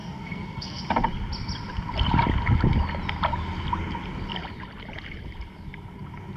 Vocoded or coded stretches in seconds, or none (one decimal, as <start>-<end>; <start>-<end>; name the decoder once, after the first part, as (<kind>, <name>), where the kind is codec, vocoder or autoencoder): 0.0-0.8 (codec, SNAC)